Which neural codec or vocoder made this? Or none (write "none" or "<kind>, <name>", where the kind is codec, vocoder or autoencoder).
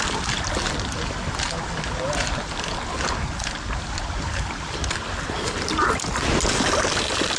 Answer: none